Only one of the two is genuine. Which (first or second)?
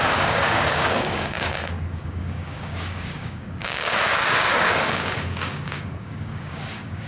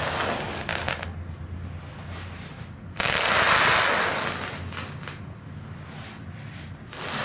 second